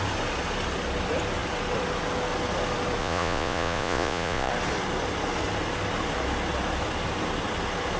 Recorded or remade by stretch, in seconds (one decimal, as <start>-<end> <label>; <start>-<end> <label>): 0.0-3.0 recorded; 3.0-4.5 remade; 4.5-8.0 recorded

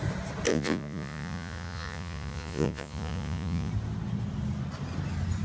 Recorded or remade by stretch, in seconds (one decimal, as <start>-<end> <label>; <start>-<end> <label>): 0.0-0.5 recorded; 0.5-3.7 remade; 3.7-5.4 recorded

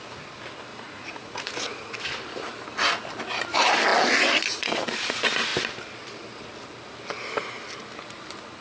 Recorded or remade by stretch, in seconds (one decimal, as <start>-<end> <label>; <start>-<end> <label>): 0.0-0.7 recorded; 0.7-1.9 remade; 1.9-8.6 recorded

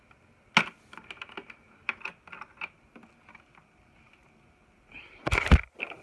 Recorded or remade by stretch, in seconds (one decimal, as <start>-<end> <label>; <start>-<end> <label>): 0.0-6.0 recorded

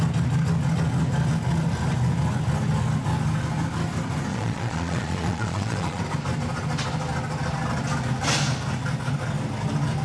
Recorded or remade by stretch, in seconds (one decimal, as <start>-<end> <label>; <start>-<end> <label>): 0.0-4.3 recorded; 4.3-6.0 remade; 6.0-10.0 recorded